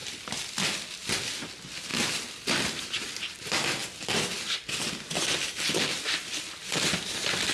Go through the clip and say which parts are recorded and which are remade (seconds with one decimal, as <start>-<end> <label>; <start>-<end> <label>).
0.0-7.5 recorded